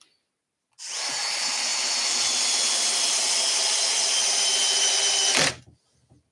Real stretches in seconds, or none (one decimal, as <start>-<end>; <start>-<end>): 0.0-6.3